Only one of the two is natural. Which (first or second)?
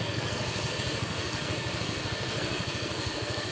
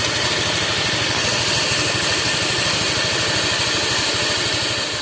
second